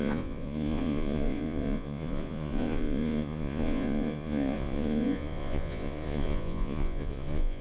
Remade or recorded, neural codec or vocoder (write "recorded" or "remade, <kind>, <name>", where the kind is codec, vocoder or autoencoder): remade, vocoder, Vocos